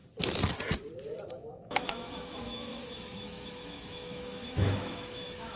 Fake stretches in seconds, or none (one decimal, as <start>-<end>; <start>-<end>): 1.3-5.6